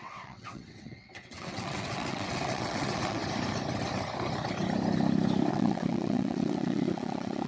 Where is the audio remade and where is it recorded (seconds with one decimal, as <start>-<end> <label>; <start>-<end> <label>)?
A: 0.0-3.2 remade; 3.2-5.5 recorded; 5.5-7.5 remade

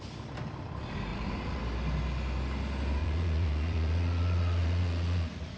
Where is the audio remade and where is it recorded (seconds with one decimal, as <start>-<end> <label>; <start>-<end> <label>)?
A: 0.0-1.1 recorded; 1.1-1.6 remade; 1.6-3.0 recorded; 3.0-5.6 remade

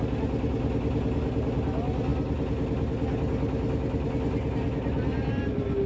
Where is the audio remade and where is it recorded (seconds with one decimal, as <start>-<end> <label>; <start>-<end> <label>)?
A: 0.0-5.9 recorded

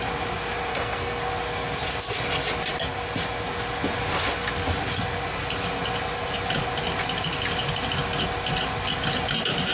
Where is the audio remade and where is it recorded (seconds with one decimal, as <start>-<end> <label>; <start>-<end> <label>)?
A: 0.0-0.7 recorded; 0.7-1.3 remade; 1.3-9.7 recorded